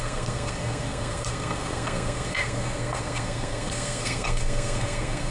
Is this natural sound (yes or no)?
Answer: no